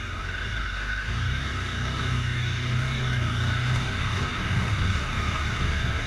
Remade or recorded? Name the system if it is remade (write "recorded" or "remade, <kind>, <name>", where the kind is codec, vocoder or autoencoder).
remade, codec, DAC